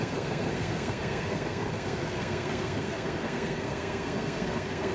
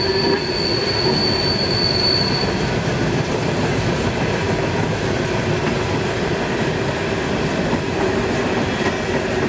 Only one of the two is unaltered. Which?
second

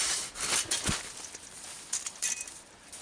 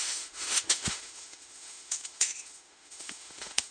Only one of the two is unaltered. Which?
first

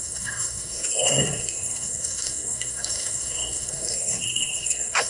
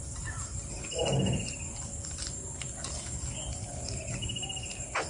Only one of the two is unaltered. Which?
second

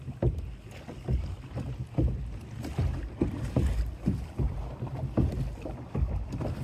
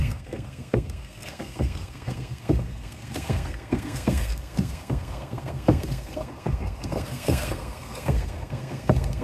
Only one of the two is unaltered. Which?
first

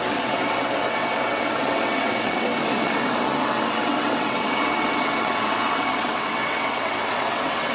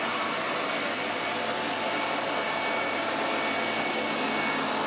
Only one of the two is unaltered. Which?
second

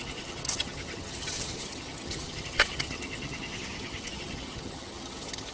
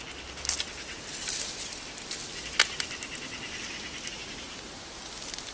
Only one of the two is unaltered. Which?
second